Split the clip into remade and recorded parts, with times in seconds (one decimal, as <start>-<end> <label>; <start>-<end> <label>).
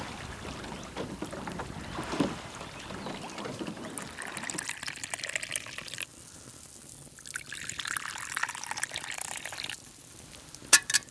0.0-11.1 recorded